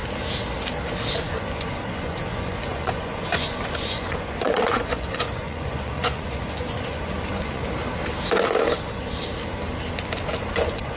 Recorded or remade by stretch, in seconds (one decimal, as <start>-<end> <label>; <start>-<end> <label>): 0.0-1.2 recorded; 1.2-7.6 remade; 7.6-10.5 recorded; 10.5-11.0 remade